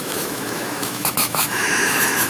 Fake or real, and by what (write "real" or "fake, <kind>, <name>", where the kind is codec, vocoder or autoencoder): fake, autoencoder, DAC-VAE